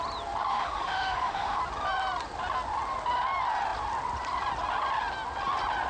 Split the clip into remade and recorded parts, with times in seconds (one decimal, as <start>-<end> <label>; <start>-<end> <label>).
0.0-0.5 recorded; 0.5-1.6 remade; 1.6-5.9 recorded